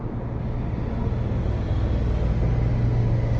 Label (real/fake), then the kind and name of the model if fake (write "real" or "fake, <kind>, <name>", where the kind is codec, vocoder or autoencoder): real